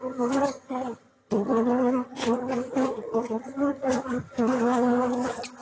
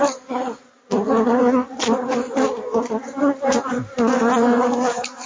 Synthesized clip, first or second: first